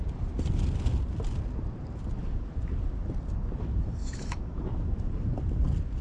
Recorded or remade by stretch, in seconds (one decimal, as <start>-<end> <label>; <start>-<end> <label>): 0.0-4.0 recorded; 4.0-4.6 remade; 4.6-6.0 recorded